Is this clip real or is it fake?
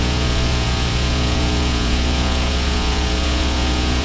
fake